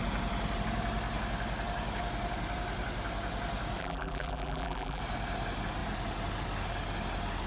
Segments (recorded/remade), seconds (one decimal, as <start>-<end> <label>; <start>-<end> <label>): 0.0-3.8 recorded; 3.8-5.0 remade; 5.0-7.5 recorded